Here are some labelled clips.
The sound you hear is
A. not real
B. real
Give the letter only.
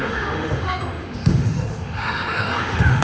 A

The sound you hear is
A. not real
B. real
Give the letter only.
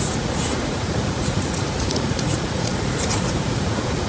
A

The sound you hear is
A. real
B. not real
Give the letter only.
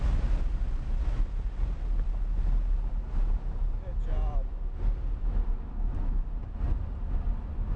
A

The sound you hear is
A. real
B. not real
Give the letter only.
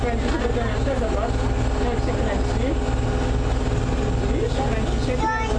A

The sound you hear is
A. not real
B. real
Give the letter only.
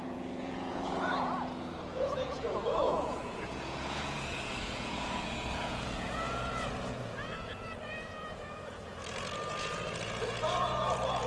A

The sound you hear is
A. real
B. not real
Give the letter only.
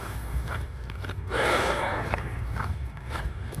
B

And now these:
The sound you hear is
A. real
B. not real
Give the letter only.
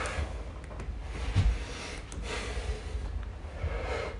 A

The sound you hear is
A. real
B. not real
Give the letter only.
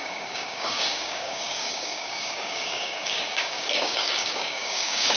B